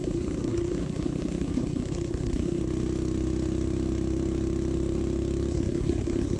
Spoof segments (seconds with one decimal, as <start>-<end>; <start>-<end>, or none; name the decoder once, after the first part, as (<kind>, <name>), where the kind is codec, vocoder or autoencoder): 0.0-2.6 (codec, SNAC); 5.5-6.4